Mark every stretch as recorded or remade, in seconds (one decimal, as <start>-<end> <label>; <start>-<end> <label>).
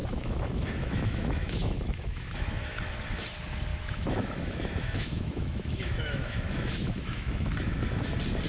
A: 0.0-2.8 remade; 2.8-3.7 recorded; 3.7-8.1 remade; 8.1-8.5 recorded